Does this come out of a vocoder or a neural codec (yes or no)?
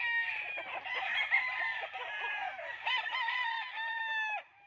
yes